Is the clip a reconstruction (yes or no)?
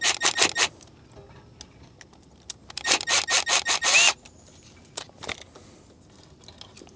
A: no